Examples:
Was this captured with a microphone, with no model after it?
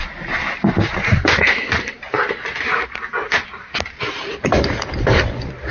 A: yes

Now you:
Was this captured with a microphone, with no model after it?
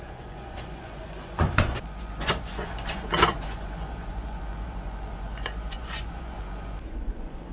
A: no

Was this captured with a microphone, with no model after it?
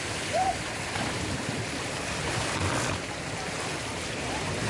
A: no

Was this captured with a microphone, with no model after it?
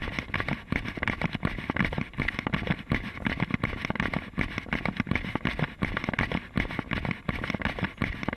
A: yes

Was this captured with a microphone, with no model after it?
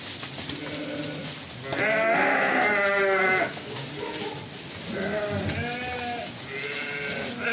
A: yes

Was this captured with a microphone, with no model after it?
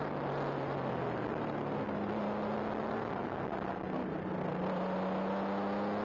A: yes